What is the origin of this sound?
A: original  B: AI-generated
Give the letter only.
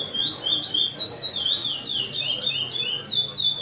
A